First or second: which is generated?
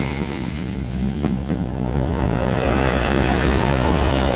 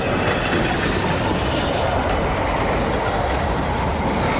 first